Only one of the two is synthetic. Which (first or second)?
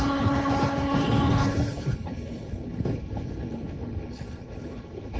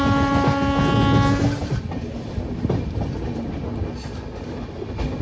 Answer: first